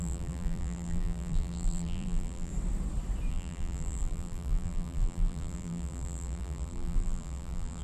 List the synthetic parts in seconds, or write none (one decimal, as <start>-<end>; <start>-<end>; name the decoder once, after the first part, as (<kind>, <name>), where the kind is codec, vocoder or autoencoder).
0.0-2.5 (vocoder, BigVGAN v2); 3.3-7.8